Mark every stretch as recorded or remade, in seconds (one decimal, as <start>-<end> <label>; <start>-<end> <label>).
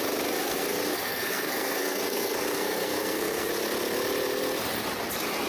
0.0-0.4 recorded; 0.4-3.5 remade; 3.5-5.5 recorded